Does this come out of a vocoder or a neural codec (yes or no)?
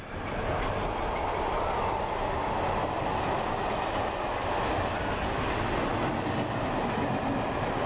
no